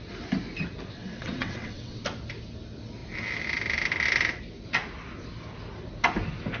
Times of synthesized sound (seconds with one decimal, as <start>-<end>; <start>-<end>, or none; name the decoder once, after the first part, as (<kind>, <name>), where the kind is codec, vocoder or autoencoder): 1.0-2.0 (vocoder, WaveNeXt)